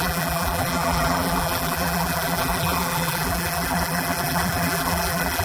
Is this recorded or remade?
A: remade